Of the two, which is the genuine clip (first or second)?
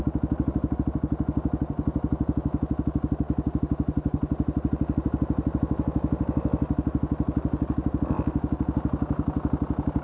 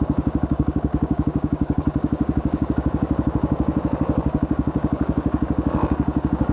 first